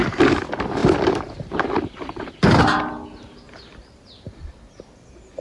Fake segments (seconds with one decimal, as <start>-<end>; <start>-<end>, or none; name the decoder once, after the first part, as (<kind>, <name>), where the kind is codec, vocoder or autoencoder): 0.8-2.3 (vocoder, BigVGAN v2)